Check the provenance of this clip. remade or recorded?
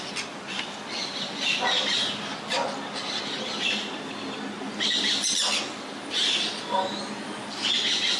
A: recorded